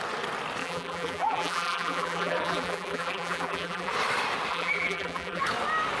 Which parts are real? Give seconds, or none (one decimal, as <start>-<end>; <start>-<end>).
0.0-0.6; 3.9-4.5; 5.4-6.0